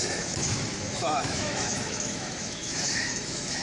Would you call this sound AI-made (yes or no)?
yes